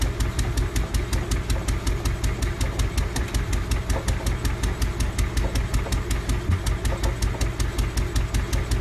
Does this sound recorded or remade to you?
recorded